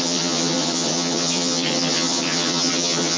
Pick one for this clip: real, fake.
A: fake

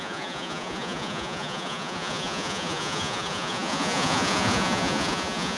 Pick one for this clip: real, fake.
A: fake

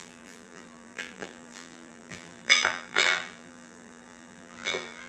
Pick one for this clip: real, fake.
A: fake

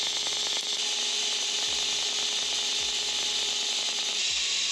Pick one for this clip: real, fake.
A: real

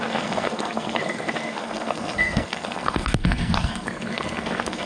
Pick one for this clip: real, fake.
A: fake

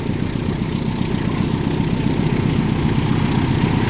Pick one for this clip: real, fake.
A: real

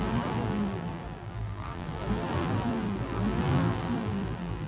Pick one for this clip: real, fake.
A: fake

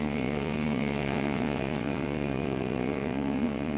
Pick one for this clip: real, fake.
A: fake